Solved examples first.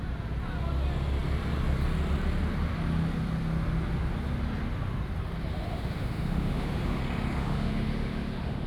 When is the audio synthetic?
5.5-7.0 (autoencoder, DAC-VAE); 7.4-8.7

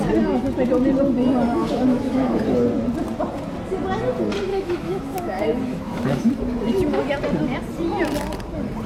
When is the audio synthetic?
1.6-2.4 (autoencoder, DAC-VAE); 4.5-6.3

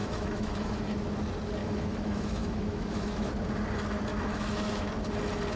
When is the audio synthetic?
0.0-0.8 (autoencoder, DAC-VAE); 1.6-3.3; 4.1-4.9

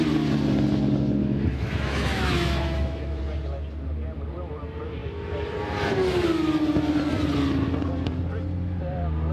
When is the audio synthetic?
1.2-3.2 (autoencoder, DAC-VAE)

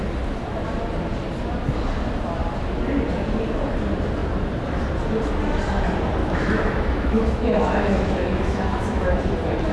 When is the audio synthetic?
6.2-9.2 (autoencoder, DAC-VAE)

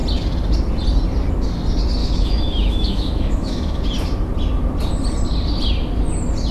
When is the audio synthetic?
2.0-3.8 (autoencoder, DAC-VAE)